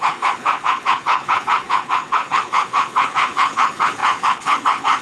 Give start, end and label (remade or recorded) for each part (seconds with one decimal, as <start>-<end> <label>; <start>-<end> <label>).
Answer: 0.0-5.0 remade